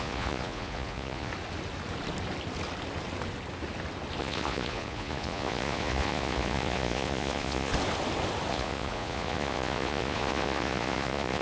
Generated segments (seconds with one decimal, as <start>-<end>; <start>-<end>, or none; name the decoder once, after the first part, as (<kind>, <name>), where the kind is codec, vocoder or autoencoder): 0.0-1.3 (vocoder, Vocos); 4.2-7.7; 8.5-11.4